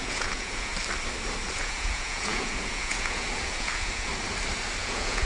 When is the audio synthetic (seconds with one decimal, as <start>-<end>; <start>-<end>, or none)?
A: 0.0-0.7; 1.5-4.1; 4.8-5.3